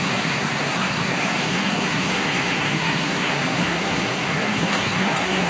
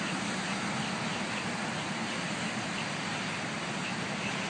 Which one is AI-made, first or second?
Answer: first